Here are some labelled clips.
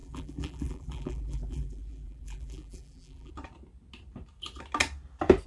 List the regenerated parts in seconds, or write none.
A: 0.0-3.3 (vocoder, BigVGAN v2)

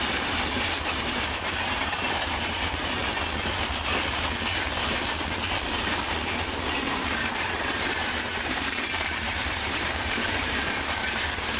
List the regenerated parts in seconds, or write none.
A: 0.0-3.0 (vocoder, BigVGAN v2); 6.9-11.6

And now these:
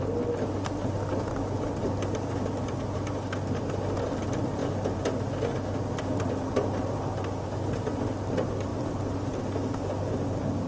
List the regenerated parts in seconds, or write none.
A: none